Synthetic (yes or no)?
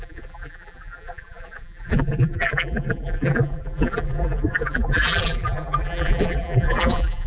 yes